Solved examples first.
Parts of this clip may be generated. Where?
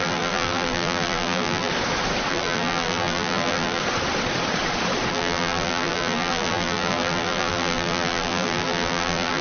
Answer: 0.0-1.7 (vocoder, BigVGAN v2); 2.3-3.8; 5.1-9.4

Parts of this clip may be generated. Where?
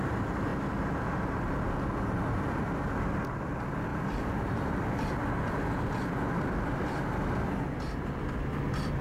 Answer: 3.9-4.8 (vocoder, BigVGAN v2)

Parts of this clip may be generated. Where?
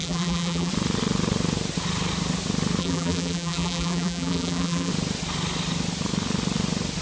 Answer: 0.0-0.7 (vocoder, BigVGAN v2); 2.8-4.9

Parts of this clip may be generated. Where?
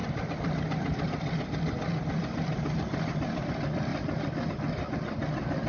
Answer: 0.0-3.4 (vocoder, BigVGAN v2); 3.9-4.5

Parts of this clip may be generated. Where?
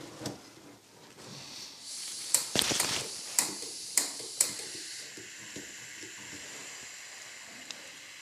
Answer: 1.3-4.9 (vocoder, BigVGAN v2)